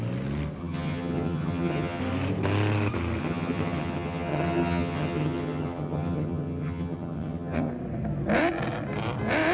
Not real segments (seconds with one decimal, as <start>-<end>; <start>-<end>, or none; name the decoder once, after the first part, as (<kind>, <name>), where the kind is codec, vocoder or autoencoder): 0.6-2.0 (vocoder, HiFi-GAN); 3.2-7.7